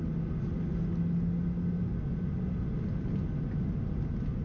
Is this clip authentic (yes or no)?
yes